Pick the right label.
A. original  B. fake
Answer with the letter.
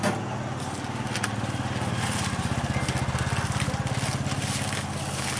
A